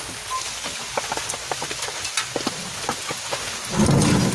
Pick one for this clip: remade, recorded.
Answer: recorded